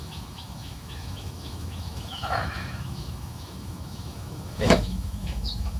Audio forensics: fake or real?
fake